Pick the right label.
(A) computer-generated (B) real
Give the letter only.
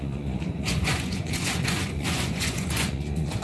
A